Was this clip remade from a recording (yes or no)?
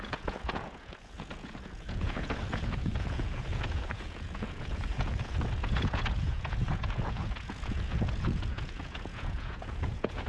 yes